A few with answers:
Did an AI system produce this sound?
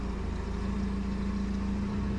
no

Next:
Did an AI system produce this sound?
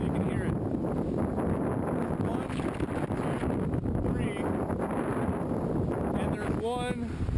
no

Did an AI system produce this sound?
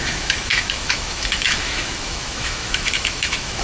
yes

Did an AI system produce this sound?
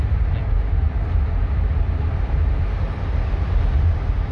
no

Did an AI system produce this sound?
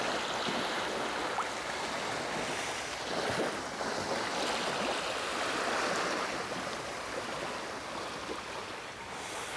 no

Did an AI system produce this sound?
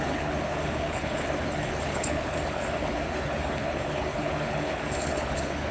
yes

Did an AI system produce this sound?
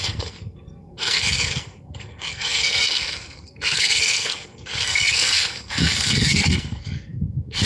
yes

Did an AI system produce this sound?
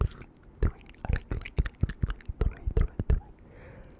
no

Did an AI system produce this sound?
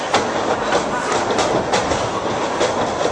no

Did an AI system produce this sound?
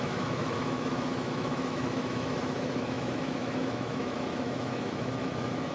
yes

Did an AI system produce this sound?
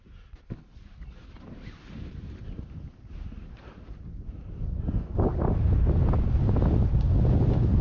no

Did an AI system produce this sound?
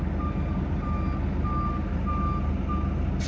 no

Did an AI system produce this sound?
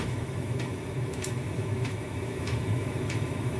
yes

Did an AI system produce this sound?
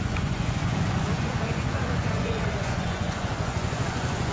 yes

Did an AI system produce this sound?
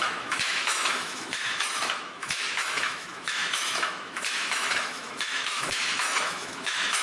yes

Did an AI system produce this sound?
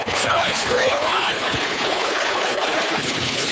yes